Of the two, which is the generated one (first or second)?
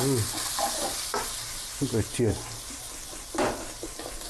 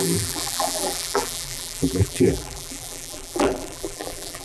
second